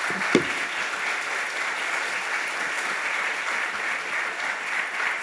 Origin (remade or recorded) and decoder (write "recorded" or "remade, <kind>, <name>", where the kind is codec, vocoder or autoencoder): recorded